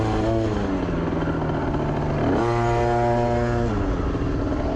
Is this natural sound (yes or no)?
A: yes